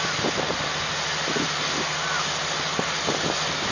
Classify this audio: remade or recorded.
recorded